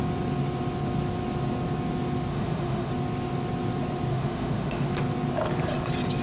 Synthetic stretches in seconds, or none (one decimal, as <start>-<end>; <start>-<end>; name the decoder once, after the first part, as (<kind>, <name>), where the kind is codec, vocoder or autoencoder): 2.3-2.9 (autoencoder, DAC-VAE); 4.1-4.9